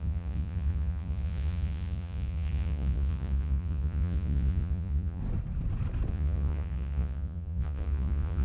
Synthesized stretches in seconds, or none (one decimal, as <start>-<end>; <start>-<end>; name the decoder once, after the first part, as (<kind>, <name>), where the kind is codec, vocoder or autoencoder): 0.0-5.2 (vocoder, Vocos); 6.1-8.4